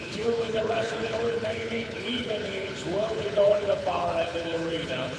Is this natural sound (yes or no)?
no